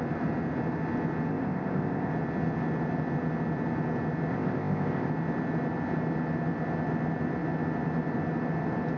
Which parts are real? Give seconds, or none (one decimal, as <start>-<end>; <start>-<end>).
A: 0.0-1.3; 2.1-4.3; 5.1-9.0